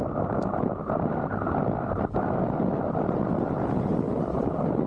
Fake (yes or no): no